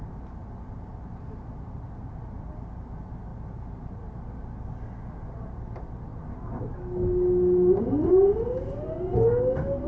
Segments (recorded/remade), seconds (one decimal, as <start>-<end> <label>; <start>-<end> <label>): 0.0-9.9 recorded